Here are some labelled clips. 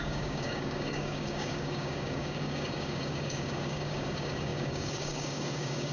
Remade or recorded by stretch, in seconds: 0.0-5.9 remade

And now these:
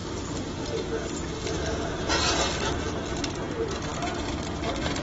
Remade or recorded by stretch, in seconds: 0.0-5.0 recorded

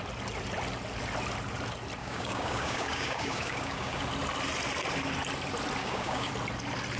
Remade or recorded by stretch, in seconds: 0.0-2.0 recorded; 2.0-4.0 remade; 4.0-5.8 recorded; 5.8-6.3 remade; 6.3-7.0 recorded

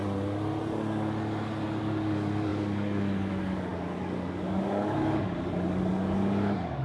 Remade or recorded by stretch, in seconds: 0.0-1.8 recorded; 1.8-6.8 remade

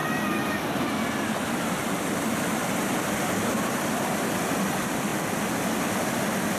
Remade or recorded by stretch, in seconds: 0.0-6.6 recorded